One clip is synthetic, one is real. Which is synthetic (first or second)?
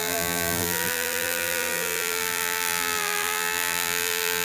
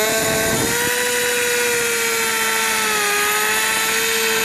first